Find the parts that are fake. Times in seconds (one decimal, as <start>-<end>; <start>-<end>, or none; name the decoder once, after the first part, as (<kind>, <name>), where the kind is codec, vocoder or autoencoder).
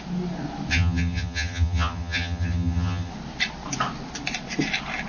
0.7-3.1 (vocoder, HiFi-GAN)